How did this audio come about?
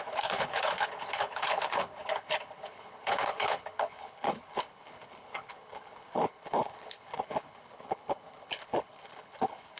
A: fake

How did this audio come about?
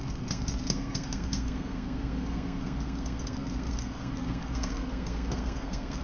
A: fake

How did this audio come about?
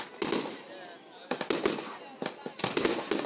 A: real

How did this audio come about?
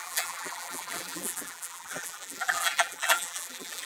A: fake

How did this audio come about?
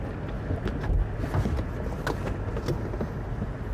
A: real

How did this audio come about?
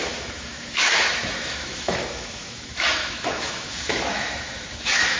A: fake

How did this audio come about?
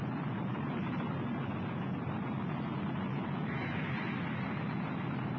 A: real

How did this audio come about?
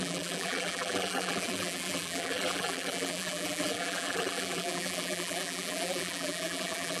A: fake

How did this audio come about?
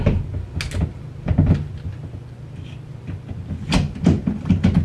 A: real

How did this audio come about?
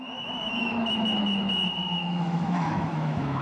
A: fake